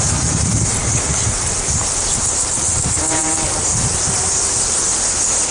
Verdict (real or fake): fake